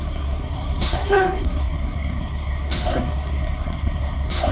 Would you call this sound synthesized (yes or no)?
yes